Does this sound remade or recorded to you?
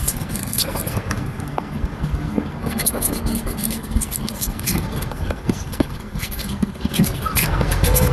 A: remade